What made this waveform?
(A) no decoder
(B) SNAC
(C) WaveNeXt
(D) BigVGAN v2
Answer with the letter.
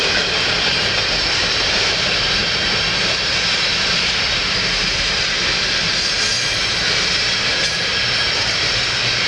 D